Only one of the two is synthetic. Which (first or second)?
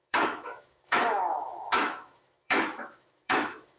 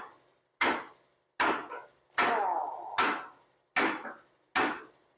first